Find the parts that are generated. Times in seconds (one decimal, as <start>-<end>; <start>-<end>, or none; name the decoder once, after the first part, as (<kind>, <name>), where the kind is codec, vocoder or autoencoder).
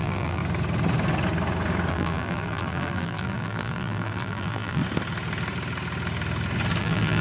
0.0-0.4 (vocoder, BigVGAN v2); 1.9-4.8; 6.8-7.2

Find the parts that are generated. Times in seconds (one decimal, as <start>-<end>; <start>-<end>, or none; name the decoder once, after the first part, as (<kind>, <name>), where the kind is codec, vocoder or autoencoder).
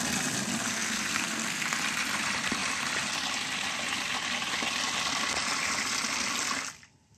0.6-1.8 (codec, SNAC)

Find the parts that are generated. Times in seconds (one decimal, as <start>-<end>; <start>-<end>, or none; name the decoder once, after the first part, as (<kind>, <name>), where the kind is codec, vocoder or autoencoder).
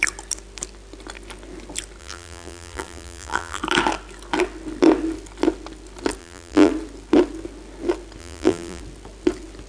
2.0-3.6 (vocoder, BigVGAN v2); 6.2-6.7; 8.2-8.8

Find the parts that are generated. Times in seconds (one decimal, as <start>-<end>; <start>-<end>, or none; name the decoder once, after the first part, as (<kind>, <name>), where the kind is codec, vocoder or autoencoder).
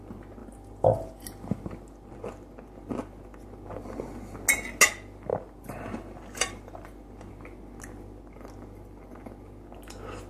0.4-2.1 (vocoder, BigVGAN v2); 5.3-7.3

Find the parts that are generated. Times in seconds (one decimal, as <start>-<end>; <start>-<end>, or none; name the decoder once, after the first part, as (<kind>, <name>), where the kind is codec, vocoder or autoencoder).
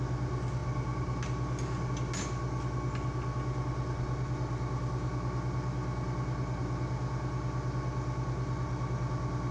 none